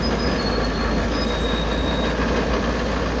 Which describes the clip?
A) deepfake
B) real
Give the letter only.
B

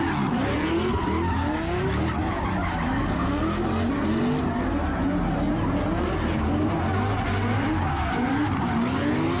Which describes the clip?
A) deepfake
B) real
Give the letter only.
B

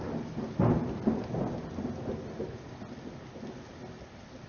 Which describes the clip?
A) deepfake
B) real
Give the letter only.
B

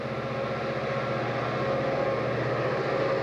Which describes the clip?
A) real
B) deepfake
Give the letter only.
A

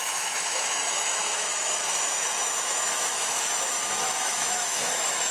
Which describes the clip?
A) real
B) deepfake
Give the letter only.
B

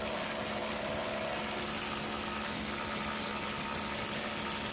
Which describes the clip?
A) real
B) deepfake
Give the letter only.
A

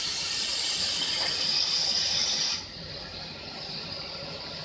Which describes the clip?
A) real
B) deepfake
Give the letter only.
A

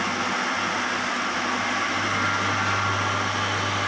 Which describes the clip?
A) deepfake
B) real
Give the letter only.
B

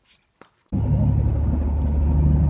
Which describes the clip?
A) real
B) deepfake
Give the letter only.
A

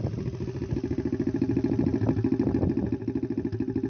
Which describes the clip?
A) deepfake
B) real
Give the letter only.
B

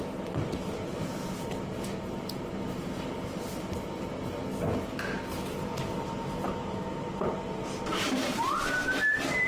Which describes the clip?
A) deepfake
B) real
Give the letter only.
B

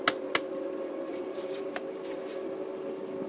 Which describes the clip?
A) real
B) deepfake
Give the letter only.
A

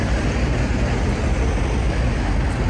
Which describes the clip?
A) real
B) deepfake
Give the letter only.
A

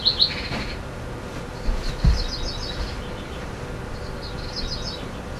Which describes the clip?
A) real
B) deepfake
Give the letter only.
A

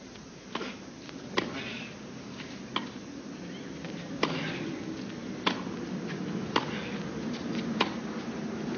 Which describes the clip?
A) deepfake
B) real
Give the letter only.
B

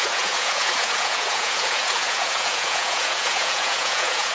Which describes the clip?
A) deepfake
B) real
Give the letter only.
A